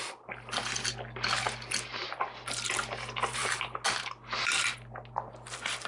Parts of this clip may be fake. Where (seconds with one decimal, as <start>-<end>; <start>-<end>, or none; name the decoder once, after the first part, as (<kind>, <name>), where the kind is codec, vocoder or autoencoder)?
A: none